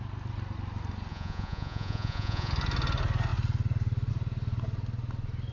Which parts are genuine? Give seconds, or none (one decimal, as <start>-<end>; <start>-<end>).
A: 0.0-1.1; 2.5-5.5